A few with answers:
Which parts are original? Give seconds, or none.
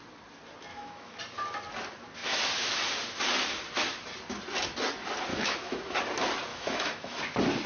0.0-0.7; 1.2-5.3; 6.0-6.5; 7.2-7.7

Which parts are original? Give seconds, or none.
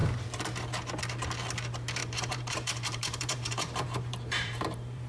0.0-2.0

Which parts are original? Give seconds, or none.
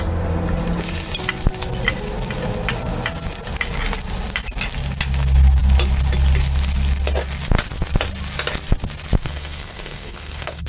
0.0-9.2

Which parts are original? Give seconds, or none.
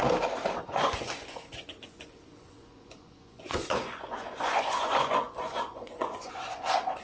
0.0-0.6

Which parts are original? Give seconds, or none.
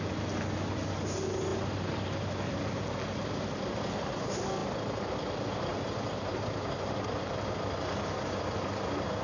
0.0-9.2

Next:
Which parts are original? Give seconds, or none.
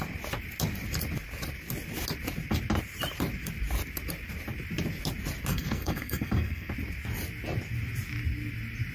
0.0-5.5; 6.7-8.9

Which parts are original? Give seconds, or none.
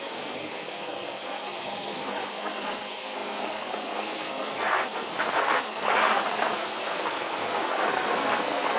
none